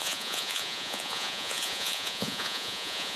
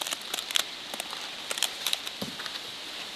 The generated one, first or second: first